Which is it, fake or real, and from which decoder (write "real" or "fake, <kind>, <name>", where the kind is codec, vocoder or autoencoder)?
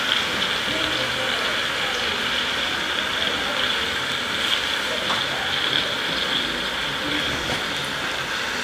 real